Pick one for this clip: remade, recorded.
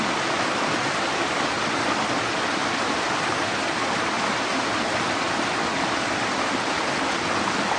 recorded